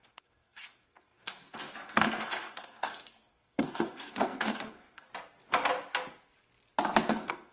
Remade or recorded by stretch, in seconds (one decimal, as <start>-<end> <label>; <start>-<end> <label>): 0.0-5.1 remade; 5.1-7.1 recorded; 7.1-7.5 remade